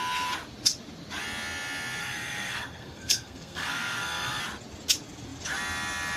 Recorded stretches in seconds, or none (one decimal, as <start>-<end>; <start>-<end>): 0.0-2.0; 4.4-6.2